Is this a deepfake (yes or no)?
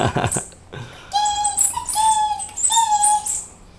no